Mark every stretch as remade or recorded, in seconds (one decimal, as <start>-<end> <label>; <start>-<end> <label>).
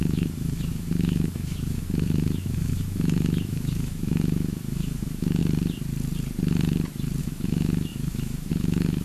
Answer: 0.0-5.4 remade; 5.4-7.2 recorded; 7.2-9.0 remade